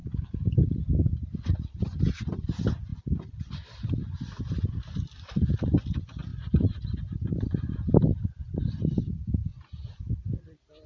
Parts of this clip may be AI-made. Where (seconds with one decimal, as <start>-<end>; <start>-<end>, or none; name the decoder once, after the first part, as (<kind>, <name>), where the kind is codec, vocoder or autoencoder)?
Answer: 2.9-5.5 (vocoder, BigVGAN v2); 6.3-8.5; 9.5-10.9

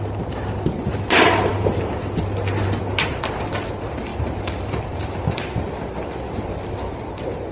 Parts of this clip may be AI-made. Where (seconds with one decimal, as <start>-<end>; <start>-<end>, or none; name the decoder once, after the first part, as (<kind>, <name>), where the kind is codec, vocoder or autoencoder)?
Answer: 4.1-5.2 (vocoder, BigVGAN v2)

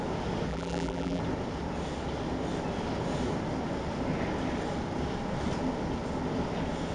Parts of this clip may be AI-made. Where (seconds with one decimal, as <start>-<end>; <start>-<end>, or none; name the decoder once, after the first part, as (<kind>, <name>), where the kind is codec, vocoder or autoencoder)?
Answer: 0.5-1.2 (vocoder, BigVGAN v2)

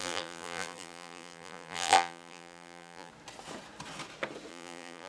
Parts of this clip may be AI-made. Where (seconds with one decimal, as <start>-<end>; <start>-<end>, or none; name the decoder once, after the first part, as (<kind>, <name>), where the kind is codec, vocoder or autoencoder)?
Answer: 0.0-3.1 (vocoder, BigVGAN v2); 4.5-5.1

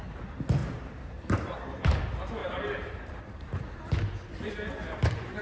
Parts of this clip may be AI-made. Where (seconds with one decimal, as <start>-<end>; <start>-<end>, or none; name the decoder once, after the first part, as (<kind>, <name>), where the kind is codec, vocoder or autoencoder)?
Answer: 0.6-2.0 (vocoder, BigVGAN v2); 2.4-3.8

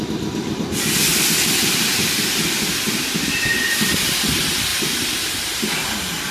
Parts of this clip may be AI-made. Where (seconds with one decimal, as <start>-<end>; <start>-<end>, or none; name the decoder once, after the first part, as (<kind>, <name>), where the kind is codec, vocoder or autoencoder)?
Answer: 1.1-2.2 (vocoder, BigVGAN v2); 4.7-5.7

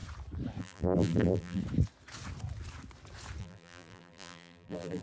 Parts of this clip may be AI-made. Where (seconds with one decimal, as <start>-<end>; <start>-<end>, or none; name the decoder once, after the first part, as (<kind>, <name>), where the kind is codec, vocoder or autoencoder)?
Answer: 0.6-1.6 (vocoder, BigVGAN v2); 3.4-5.0

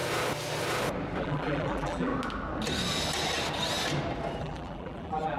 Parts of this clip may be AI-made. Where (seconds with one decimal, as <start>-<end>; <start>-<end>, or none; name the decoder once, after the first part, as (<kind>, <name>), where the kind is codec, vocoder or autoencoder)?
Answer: 1.2-2.1 (vocoder, BigVGAN v2); 4.4-5.4